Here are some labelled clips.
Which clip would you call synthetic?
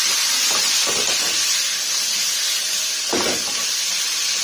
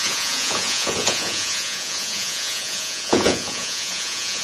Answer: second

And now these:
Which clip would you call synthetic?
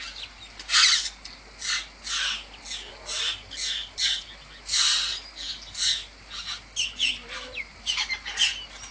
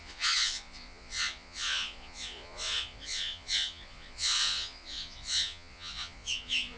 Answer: second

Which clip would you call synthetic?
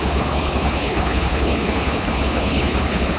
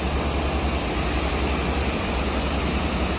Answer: first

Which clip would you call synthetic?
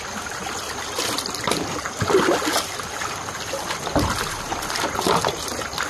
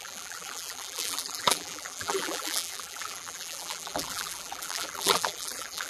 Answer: second